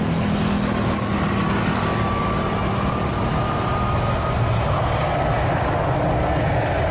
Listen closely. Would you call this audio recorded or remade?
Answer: recorded